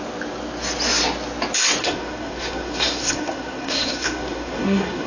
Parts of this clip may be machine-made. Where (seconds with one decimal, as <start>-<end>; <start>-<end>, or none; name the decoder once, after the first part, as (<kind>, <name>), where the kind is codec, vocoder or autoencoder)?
1.8-5.1 (codec, SNAC)